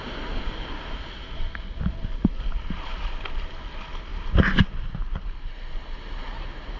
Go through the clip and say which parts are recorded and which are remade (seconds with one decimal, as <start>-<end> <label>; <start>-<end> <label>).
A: 0.0-6.8 recorded